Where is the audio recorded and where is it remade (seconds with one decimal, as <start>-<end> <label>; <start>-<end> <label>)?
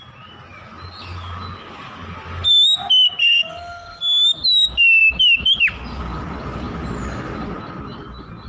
0.0-3.2 recorded; 3.2-4.0 remade; 4.0-8.5 recorded